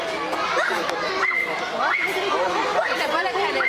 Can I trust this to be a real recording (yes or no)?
no